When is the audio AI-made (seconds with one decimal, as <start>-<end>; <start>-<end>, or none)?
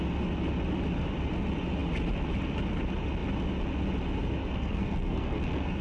4.4-5.8